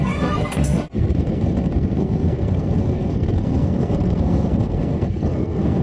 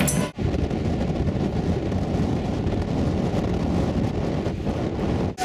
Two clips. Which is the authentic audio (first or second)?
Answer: second